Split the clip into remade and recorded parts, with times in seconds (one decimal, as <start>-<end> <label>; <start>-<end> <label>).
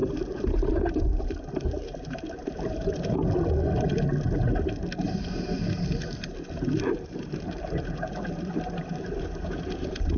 0.0-3.2 remade; 3.2-6.4 recorded; 6.4-10.2 remade